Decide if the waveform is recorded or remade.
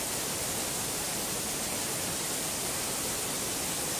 recorded